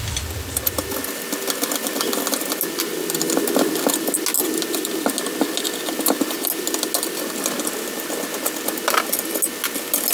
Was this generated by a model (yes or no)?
no